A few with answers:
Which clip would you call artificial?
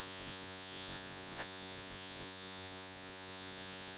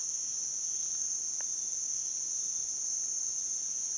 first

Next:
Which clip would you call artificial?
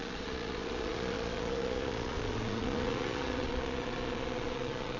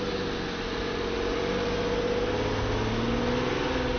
first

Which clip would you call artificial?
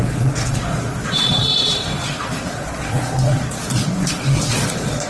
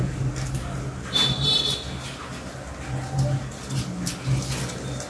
first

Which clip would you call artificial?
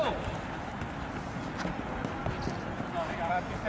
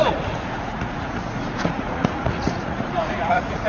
second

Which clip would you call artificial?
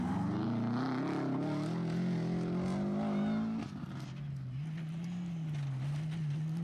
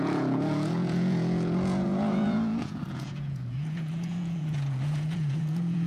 second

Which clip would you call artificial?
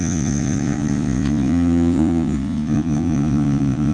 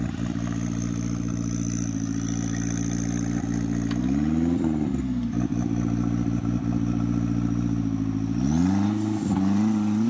first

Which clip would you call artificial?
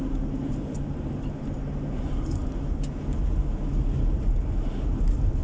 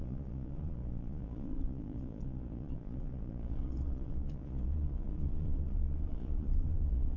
second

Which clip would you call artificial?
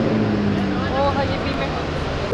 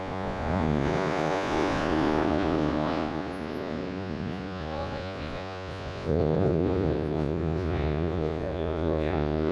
second